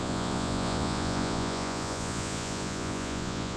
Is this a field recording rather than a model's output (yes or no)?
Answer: no